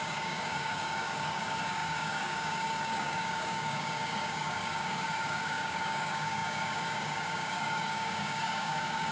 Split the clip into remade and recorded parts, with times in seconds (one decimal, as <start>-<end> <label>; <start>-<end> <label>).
0.0-9.1 remade